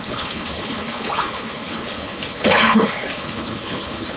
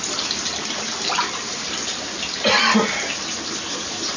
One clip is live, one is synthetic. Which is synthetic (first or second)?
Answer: first